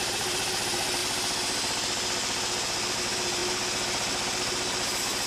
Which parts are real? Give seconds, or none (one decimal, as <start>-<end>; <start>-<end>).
1.0-3.0; 3.4-5.3